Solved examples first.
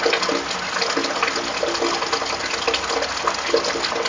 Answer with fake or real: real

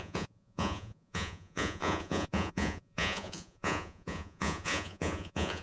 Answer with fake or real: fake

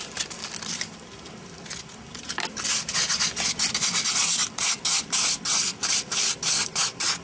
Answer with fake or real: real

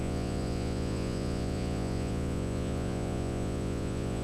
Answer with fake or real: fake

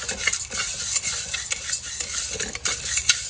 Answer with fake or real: real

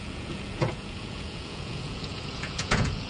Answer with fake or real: fake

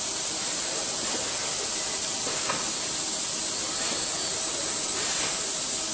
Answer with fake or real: real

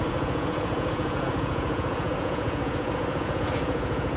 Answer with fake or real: fake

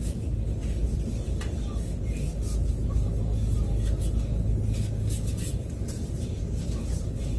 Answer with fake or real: real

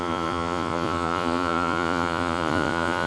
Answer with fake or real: fake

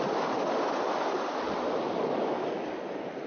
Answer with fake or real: real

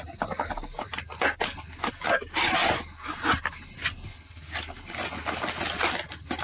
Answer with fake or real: real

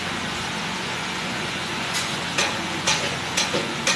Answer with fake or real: fake